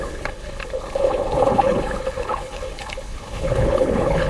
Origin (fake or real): fake